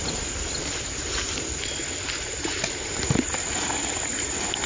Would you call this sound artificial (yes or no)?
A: no